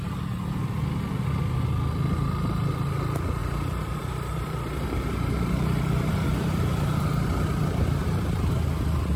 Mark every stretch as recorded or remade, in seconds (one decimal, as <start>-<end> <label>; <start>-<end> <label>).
0.0-3.4 recorded; 3.4-8.5 remade; 8.5-9.2 recorded